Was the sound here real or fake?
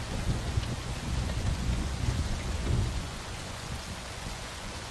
fake